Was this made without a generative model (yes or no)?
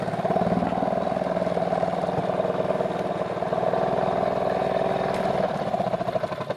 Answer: yes